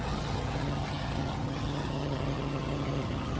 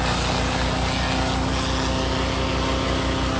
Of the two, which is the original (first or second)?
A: second